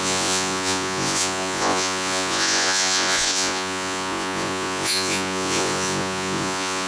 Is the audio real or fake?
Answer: fake